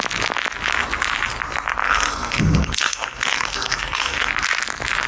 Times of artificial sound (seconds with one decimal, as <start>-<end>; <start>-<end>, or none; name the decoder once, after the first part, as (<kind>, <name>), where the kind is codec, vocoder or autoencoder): 1.8-4.3 (codec, SNAC)